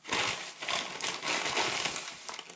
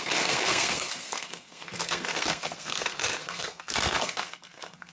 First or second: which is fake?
second